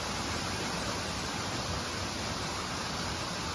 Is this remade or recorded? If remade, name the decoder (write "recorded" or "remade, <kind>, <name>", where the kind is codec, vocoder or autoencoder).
recorded